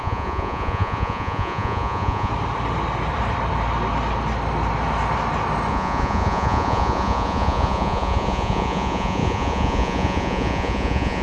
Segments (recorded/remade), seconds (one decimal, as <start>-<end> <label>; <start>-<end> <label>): 0.0-2.3 remade; 2.3-5.7 recorded; 5.7-11.2 remade